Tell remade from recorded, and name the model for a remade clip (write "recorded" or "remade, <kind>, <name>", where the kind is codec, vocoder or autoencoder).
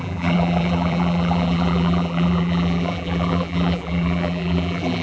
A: remade, vocoder, BigVGAN v2